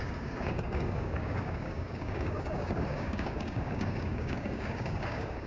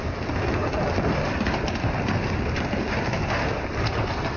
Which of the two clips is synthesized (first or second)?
first